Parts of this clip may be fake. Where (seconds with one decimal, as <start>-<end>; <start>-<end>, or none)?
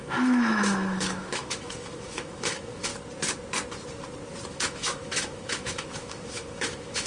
0.0-2.9; 4.5-7.1